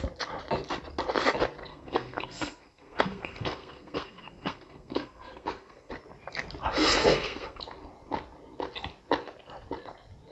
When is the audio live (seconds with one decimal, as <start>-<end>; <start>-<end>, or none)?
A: 0.0-1.7; 5.9-7.0; 7.6-10.3